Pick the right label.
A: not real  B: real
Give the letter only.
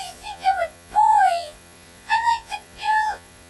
A